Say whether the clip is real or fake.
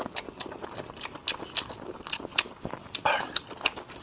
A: real